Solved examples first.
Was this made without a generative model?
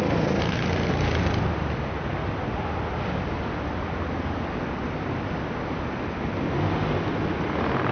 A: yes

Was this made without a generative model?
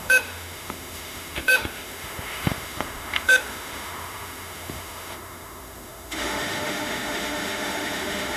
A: no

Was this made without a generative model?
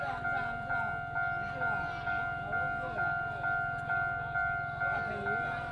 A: yes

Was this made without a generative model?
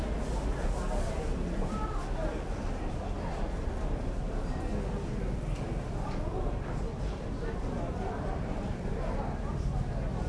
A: yes